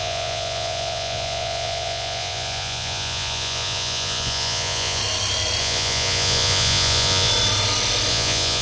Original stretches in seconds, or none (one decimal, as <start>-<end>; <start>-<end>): 5.0-5.6; 7.3-8.1